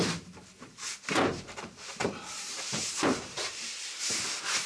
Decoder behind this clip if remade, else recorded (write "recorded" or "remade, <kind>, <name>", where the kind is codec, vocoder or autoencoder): remade, vocoder, BigVGAN v2